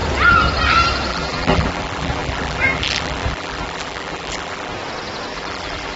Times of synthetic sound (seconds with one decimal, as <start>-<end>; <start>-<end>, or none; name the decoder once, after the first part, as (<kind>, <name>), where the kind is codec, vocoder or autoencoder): 1.1-4.7 (vocoder, BigVGAN v2); 5.3-6.0